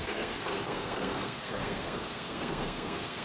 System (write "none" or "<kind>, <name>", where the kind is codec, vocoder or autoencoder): codec, SNAC